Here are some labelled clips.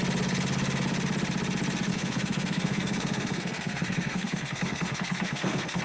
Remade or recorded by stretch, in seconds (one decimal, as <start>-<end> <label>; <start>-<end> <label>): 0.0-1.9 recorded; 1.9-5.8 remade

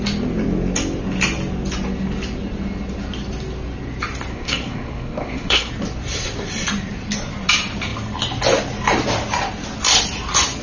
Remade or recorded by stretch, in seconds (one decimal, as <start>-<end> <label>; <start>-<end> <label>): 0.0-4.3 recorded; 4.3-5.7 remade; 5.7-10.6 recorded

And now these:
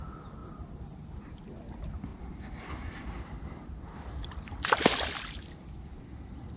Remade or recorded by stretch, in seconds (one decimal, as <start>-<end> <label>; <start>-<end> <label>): 0.0-6.6 recorded